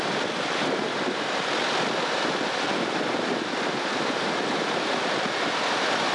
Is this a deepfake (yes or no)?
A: no